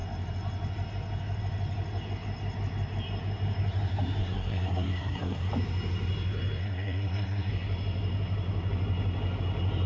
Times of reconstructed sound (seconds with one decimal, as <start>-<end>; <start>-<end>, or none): 4.2-5.5; 6.6-7.5